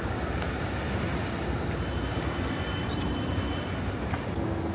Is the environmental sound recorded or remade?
recorded